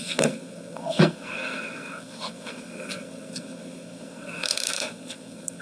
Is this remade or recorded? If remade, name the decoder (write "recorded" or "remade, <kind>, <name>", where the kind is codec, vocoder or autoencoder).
remade, codec, SNAC